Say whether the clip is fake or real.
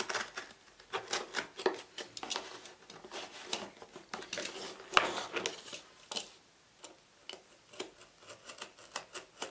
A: real